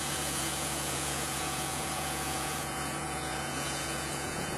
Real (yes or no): no